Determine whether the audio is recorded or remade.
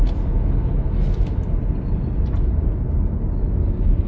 recorded